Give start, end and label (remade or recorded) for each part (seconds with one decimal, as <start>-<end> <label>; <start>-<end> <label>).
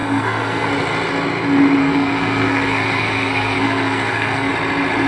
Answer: 0.0-0.7 remade; 0.7-1.8 recorded; 1.8-4.5 remade; 4.5-5.1 recorded